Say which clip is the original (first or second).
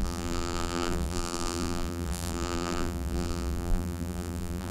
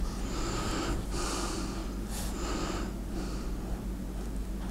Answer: second